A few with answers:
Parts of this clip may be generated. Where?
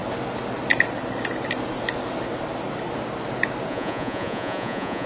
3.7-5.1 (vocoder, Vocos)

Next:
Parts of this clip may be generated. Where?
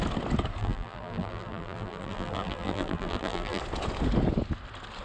0.6-3.6 (vocoder, BigVGAN v2)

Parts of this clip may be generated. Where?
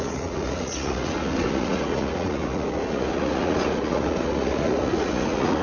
0.0-5.6 (vocoder, Vocos)